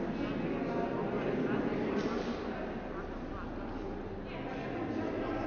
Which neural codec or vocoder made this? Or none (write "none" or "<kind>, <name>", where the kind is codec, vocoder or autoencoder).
none